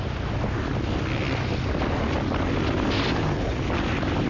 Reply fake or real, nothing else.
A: real